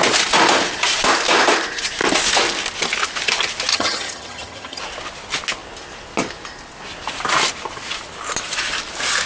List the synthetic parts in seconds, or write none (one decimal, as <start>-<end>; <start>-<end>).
3.7-4.8